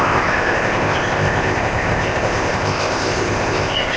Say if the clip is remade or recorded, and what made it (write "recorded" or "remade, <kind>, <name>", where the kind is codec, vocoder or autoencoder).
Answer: remade, codec, ZipCodec